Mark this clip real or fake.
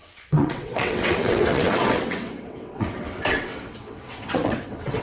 fake